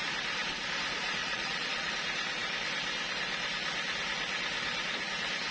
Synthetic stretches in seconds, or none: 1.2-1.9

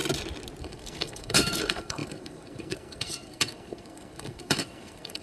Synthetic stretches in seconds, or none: 0.6-5.2

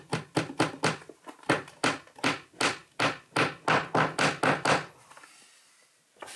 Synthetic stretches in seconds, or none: none

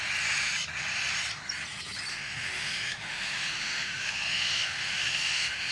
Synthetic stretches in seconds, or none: 2.1-5.7

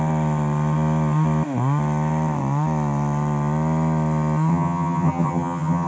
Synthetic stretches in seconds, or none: 4.5-5.9

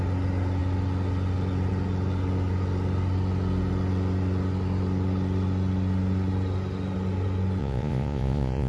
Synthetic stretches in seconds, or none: 7.6-8.7